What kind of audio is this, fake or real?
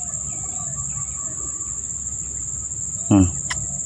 real